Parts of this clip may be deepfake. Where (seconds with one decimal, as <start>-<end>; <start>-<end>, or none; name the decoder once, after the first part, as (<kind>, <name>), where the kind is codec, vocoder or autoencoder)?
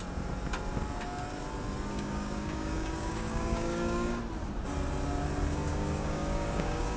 1.9-4.2 (codec, DAC); 5.7-7.0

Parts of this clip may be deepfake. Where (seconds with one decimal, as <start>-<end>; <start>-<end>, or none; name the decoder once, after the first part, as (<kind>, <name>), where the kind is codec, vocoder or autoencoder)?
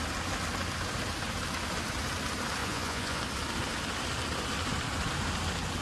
2.6-3.2 (vocoder, Vocos)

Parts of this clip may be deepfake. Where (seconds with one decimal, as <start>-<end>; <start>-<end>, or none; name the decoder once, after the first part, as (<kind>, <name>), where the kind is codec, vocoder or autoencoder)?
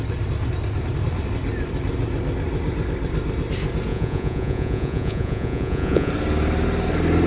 3.9-6.1 (vocoder, Vocos)